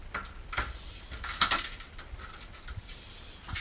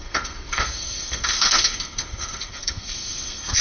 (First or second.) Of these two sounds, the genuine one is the first